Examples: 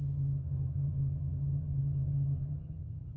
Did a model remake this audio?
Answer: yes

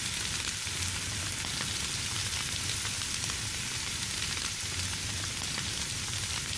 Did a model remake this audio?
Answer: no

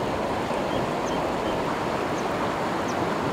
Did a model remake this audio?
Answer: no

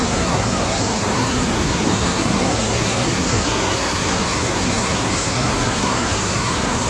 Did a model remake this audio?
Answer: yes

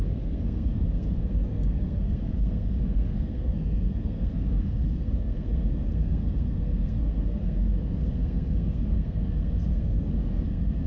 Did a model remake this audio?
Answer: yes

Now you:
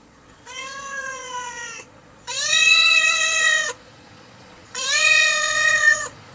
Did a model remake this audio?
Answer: yes